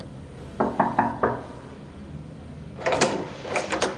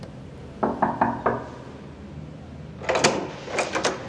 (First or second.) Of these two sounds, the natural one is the second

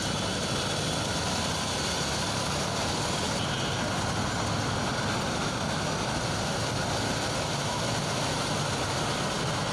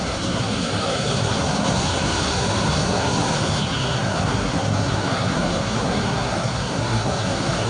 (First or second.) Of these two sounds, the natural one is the first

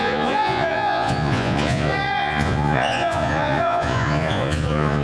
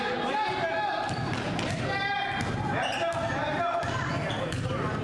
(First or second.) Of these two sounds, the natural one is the second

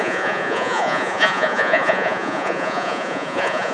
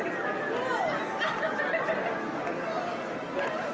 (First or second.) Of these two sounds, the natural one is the second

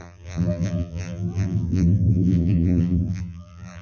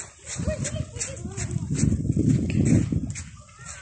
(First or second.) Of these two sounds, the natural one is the second